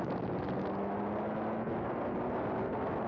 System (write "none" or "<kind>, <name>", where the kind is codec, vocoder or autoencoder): none